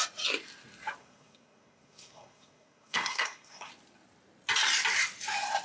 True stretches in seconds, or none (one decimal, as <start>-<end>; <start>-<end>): 0.0-1.0; 3.7-5.6